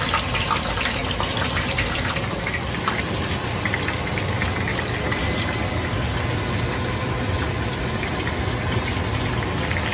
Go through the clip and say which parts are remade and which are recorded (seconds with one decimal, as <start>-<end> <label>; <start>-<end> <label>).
0.0-9.9 recorded